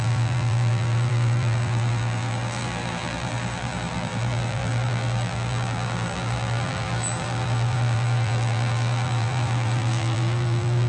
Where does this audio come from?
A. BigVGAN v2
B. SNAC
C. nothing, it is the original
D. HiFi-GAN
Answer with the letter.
A